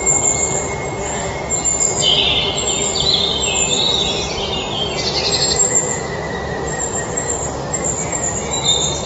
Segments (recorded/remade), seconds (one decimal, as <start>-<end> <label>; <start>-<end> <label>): 0.0-1.0 recorded; 1.0-1.5 remade; 1.5-9.1 recorded